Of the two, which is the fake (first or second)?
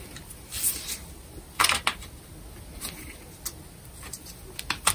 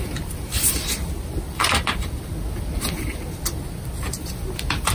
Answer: second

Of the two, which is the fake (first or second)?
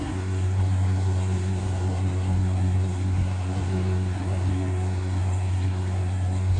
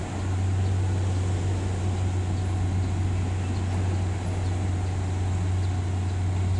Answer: first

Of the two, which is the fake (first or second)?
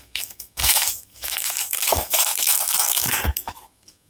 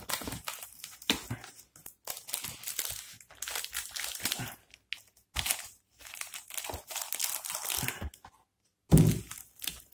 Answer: first